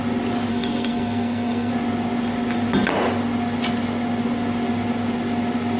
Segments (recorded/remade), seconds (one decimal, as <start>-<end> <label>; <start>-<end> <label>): 0.0-0.5 recorded; 0.5-1.7 remade; 1.7-5.8 recorded